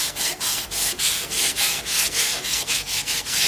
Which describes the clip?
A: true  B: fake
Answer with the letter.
B